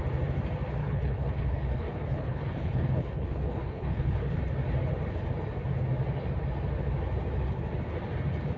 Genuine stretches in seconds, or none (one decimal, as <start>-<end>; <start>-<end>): 0.0-0.8; 4.4-8.6